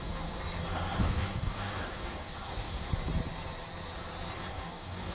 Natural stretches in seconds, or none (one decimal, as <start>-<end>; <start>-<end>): 0.4-1.0; 2.9-4.5